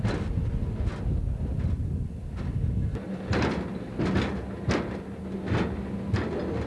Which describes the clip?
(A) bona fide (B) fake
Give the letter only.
A